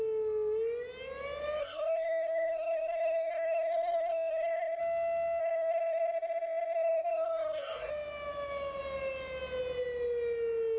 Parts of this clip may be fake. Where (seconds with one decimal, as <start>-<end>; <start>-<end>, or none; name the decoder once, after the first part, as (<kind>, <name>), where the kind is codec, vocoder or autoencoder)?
1.6-4.8 (codec, SNAC); 5.4-7.9